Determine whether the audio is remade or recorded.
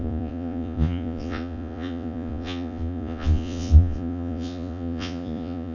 remade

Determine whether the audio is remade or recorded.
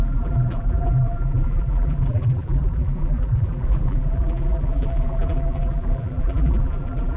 remade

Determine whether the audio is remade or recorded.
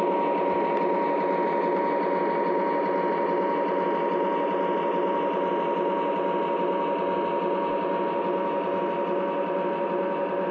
recorded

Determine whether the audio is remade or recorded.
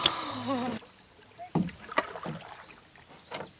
recorded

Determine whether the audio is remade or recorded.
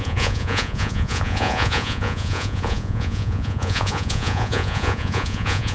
remade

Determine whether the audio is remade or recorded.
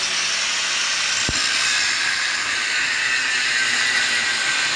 recorded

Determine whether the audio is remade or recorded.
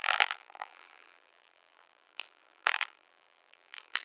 remade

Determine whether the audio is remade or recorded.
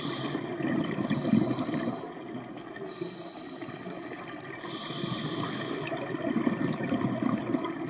recorded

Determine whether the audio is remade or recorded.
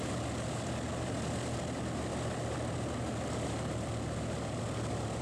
recorded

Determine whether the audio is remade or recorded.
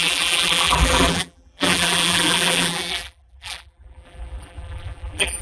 remade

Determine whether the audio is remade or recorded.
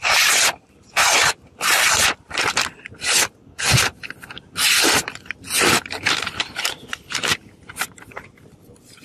recorded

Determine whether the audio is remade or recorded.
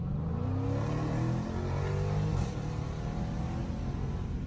recorded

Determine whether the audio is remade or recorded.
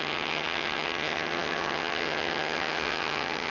remade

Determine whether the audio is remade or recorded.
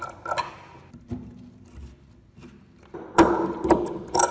recorded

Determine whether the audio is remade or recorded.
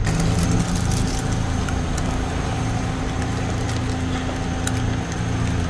recorded